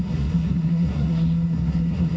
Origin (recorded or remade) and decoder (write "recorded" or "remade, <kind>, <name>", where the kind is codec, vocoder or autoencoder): remade, codec, SNAC